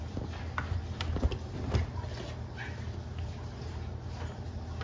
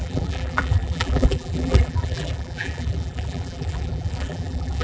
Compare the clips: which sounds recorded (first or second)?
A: first